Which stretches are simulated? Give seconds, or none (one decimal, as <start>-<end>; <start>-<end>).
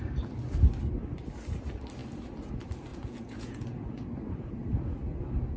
2.9-3.9